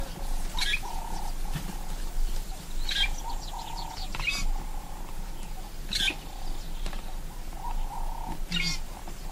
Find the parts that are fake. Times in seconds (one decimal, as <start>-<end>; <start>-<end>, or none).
none